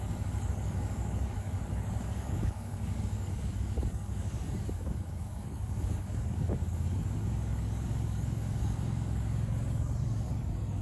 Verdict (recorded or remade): remade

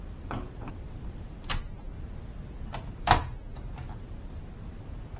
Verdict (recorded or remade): recorded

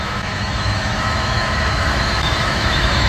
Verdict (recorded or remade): remade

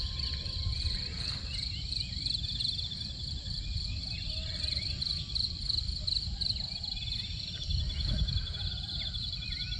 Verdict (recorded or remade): remade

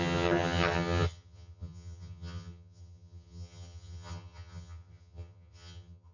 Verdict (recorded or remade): remade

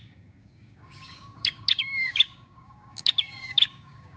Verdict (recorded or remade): remade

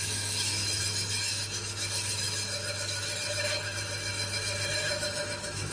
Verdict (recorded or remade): remade